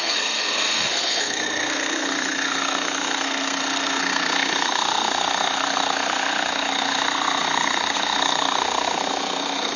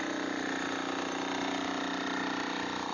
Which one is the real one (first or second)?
second